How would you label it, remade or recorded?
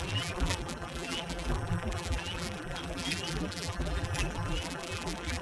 remade